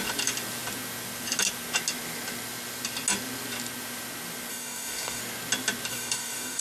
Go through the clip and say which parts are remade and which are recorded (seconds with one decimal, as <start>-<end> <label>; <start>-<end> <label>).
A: 0.0-4.5 recorded; 4.5-5.2 remade; 5.2-5.9 recorded; 5.9-6.6 remade